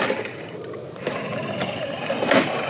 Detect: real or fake real